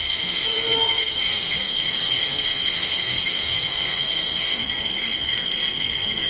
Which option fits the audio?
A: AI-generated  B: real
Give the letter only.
A